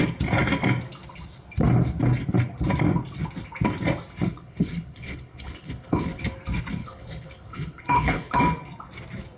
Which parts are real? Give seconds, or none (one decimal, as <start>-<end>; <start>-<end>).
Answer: 0.0-4.3; 6.2-6.8; 8.4-9.4